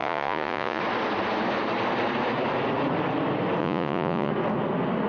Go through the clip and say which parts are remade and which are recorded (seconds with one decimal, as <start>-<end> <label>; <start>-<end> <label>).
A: 0.0-0.8 remade; 0.8-3.6 recorded; 3.6-4.3 remade; 4.3-5.1 recorded